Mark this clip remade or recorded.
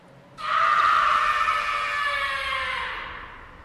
recorded